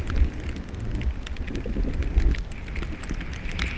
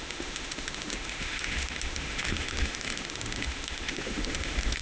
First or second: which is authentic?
first